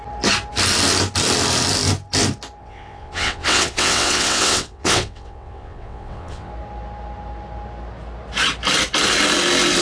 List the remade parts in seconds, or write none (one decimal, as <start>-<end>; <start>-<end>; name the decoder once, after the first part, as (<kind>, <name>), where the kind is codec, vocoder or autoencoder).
2.6-6.5 (vocoder, WaveNeXt)